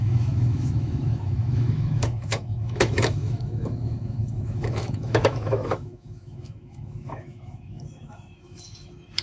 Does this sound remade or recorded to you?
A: remade